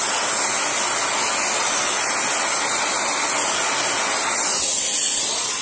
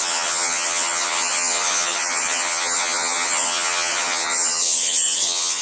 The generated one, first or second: second